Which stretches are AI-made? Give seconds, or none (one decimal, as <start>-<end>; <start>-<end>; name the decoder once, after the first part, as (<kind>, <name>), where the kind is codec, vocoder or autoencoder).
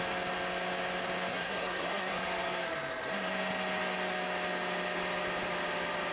1.3-2.2 (codec, SNAC)